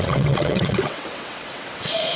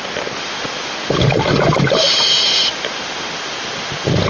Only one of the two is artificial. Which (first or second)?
first